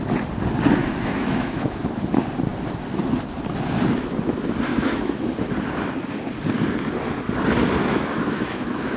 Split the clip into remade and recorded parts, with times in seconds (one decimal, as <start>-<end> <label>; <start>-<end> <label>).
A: 0.0-0.8 recorded; 0.8-1.8 remade; 1.8-4.7 recorded; 4.7-5.3 remade; 5.3-7.8 recorded; 7.8-9.0 remade